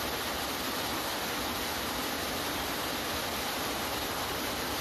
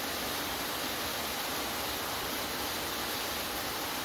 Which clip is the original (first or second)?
second